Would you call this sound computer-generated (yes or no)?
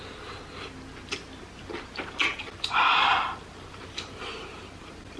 yes